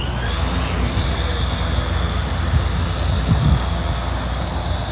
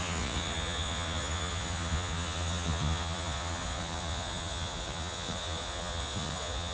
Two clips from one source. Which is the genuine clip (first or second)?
first